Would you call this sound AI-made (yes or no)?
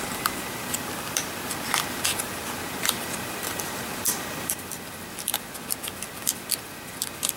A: yes